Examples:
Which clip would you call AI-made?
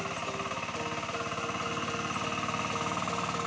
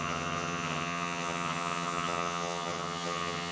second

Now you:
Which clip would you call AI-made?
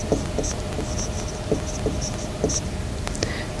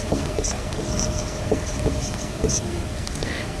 second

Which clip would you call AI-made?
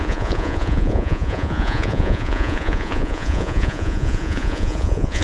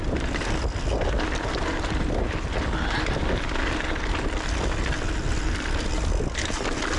first